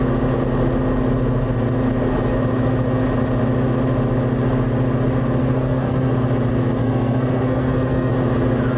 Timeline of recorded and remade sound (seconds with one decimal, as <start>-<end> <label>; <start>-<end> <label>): 0.0-5.4 recorded; 5.4-6.1 remade; 6.1-6.8 recorded; 6.8-8.1 remade; 8.1-8.8 recorded